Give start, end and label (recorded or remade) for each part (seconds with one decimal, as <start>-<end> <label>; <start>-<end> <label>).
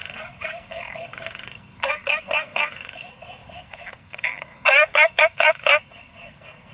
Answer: 0.0-6.7 remade